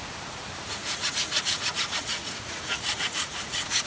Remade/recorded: remade